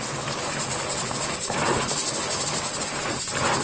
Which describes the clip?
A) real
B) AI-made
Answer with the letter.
A